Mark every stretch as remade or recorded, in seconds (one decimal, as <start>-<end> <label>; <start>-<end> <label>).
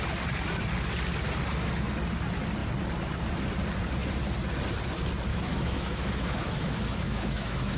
0.0-5.3 recorded; 5.3-7.8 remade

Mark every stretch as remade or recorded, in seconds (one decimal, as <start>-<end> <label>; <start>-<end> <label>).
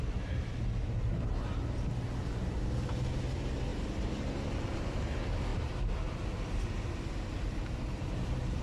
0.0-8.6 recorded